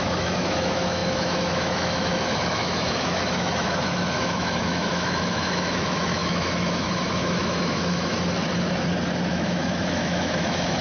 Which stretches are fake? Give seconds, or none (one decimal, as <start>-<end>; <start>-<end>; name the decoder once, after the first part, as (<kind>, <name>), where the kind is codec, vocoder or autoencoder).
0.0-8.1 (autoencoder, DAC-VAE); 9.3-10.8